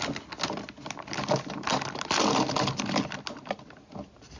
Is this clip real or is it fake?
real